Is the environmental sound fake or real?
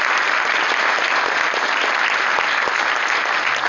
real